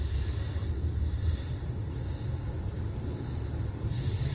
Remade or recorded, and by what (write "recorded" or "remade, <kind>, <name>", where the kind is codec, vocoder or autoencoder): recorded